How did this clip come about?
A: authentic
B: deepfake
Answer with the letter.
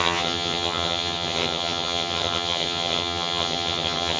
B